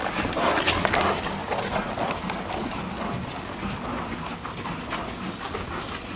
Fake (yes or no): no